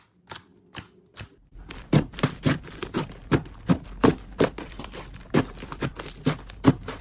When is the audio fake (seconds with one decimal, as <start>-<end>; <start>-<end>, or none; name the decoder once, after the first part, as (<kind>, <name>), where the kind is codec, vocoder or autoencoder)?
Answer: none